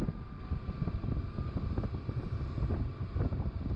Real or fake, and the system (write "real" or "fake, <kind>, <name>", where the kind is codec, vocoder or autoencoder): real